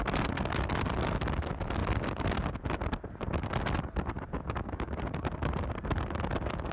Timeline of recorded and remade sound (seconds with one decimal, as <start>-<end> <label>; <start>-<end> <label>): 0.0-6.7 remade